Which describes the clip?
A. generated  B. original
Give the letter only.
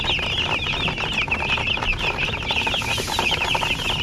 B